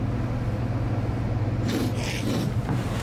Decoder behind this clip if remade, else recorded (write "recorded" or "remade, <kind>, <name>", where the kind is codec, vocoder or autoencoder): recorded